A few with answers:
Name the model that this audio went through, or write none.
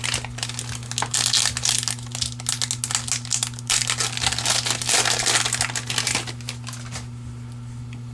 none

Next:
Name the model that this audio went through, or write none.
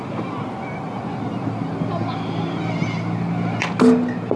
none